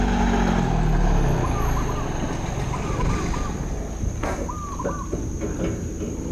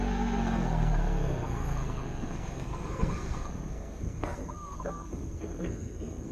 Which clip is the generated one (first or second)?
second